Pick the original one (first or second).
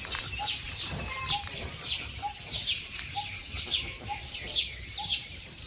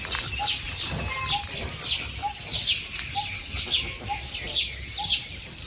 second